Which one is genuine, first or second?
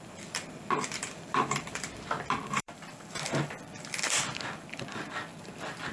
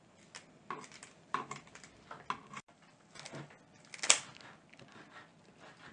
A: second